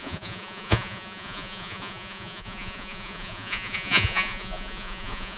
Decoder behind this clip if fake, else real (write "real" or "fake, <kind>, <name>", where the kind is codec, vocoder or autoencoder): fake, vocoder, Vocos